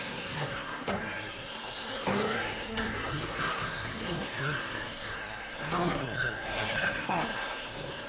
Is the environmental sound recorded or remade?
remade